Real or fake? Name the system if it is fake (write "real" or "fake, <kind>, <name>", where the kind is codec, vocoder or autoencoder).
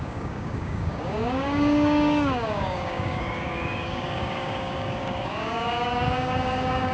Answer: fake, codec, DAC